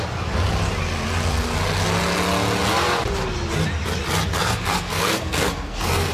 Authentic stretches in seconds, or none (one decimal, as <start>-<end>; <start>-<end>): 0.0-4.3